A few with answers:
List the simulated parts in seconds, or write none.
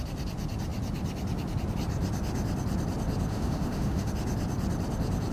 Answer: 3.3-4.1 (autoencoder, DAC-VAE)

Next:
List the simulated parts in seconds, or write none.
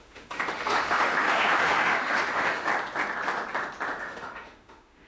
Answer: 0.0-2.7 (autoencoder, DAC-VAE); 4.0-5.1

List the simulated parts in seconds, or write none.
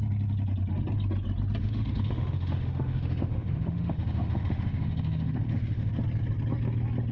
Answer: 1.6-5.9 (autoencoder, DAC-VAE)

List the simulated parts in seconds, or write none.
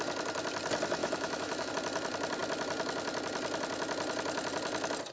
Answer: 1.0-1.7 (autoencoder, DAC-VAE)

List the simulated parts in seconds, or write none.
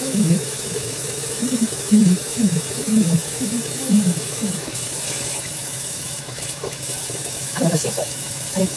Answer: 0.0-8.8 (autoencoder, DAC-VAE)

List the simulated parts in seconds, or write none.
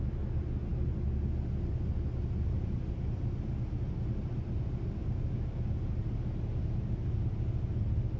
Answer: none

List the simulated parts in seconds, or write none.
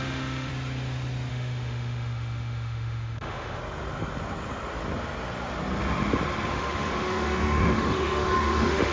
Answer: 0.0-0.5 (autoencoder, DAC-VAE); 1.3-3.6; 6.5-8.9